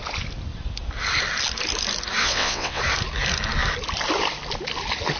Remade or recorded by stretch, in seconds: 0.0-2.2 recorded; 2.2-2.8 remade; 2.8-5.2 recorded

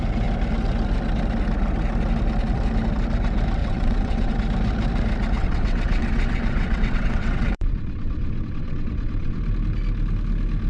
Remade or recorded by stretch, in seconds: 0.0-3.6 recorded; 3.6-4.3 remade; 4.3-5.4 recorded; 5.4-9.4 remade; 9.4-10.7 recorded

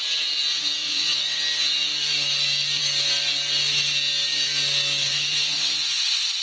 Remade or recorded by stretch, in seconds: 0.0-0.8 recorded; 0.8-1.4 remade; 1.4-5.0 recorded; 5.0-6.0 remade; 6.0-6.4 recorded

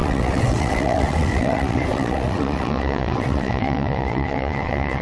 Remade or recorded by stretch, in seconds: 0.0-5.0 remade

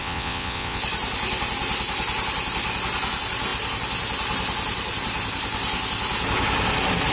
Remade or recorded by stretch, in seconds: 0.0-0.8 remade; 0.8-7.1 recorded

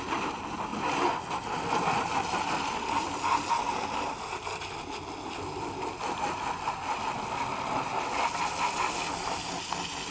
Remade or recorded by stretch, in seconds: 0.0-10.1 recorded